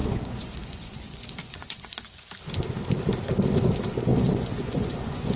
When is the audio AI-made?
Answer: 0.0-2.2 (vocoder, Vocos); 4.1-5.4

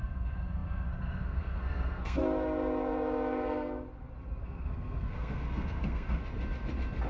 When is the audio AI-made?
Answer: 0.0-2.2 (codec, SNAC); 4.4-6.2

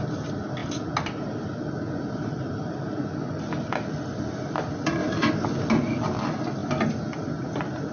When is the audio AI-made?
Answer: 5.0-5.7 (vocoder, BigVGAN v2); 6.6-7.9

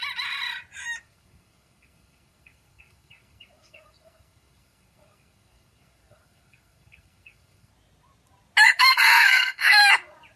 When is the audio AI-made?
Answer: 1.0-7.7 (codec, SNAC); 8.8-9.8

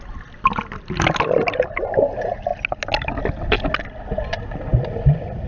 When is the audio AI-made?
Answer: none

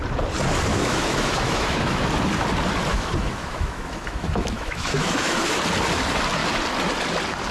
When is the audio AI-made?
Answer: 0.7-2.1 (autoencoder, DAC-VAE); 2.9-5.6